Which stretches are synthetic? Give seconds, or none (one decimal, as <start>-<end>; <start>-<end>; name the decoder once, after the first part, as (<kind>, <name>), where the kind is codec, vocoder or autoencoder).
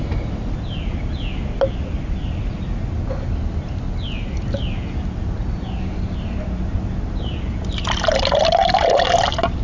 none